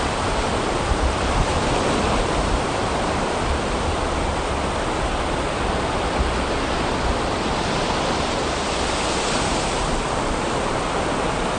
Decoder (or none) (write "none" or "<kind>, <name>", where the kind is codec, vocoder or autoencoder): none